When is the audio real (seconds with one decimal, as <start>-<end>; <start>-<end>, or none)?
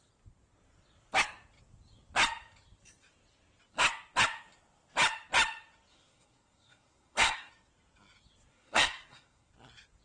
0.0-5.9; 7.5-8.5; 9.5-10.0